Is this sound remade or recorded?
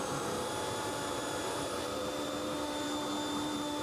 remade